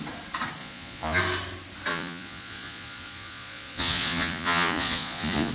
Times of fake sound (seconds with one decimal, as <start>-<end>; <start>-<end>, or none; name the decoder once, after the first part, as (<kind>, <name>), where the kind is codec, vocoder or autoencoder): 0.6-1.2 (vocoder, Vocos); 1.9-5.5